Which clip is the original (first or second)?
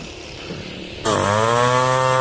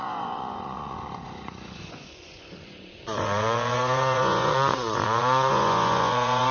first